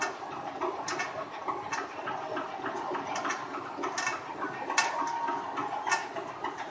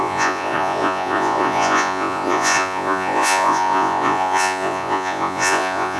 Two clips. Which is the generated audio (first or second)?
second